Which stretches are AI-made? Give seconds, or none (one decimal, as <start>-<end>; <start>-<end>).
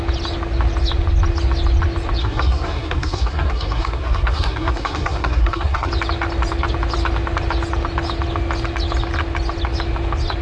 2.2-5.9